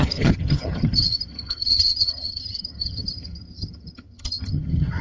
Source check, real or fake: fake